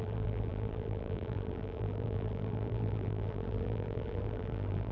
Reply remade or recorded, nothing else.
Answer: remade